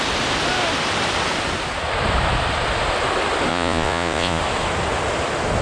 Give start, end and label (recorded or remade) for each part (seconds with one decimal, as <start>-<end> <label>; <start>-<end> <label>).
0.0-3.5 recorded; 3.5-4.4 remade; 4.4-5.6 recorded

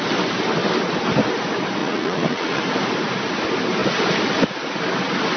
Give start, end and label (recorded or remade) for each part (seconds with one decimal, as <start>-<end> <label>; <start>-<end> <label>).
0.0-1.8 recorded; 1.8-2.6 remade; 2.6-5.4 recorded

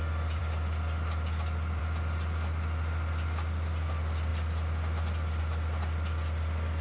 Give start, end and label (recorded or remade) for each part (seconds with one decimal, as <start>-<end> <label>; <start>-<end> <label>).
0.0-6.8 recorded

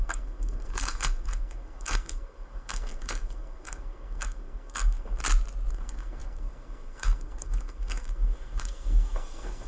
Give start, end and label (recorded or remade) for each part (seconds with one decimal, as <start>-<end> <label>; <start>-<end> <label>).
0.0-5.2 remade; 5.2-5.7 recorded; 5.7-9.7 remade

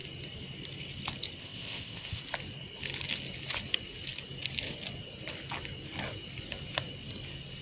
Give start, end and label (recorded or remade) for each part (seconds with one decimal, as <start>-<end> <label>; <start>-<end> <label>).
0.0-1.4 recorded; 1.4-2.2 remade; 2.2-7.6 recorded

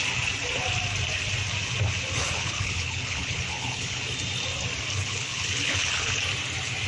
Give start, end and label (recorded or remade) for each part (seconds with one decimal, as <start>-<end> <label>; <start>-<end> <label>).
0.0-2.2 recorded; 2.2-4.0 remade; 4.0-4.9 recorded; 4.9-6.2 remade; 6.2-6.9 recorded

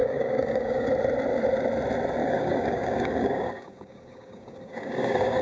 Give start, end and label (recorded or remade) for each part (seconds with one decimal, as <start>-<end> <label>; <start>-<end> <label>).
0.0-0.9 remade; 0.9-2.2 recorded; 2.2-5.4 remade